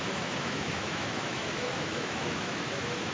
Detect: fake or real fake